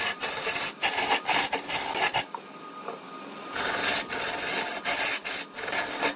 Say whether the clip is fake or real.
real